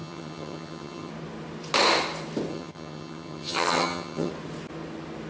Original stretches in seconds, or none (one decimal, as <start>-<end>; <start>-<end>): 1.1-2.5; 4.3-5.3